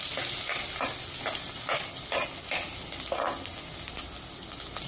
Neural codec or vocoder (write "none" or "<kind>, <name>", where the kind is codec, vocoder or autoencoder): none